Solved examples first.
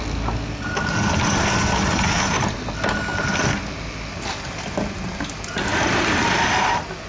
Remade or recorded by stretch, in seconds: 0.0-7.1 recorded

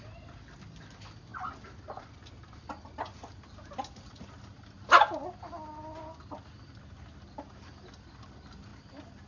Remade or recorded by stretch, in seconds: 0.0-9.3 recorded